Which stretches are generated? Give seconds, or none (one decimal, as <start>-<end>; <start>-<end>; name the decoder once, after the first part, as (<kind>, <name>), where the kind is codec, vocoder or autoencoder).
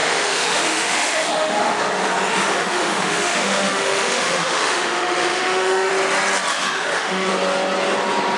0.0-1.8 (autoencoder, DAC-VAE); 2.3-5.9; 6.5-7.3